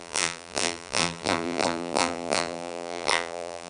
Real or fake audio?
fake